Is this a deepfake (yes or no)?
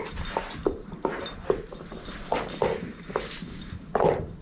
no